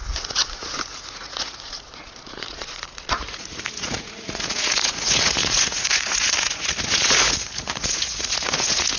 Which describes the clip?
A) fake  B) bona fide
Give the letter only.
A